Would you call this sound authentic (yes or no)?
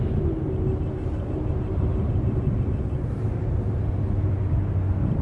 yes